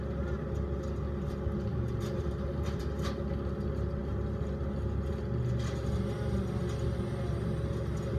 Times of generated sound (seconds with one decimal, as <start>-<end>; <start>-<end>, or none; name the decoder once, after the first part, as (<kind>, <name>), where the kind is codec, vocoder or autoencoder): 1.7-2.8 (vocoder, BigVGAN v2)